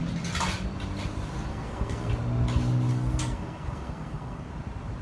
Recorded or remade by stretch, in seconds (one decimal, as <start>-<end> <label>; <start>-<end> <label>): 0.0-1.5 recorded; 1.5-2.1 remade; 2.1-2.9 recorded; 2.9-4.5 remade; 4.5-5.0 recorded